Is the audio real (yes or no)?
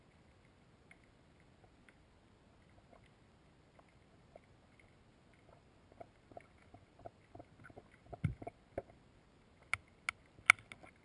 yes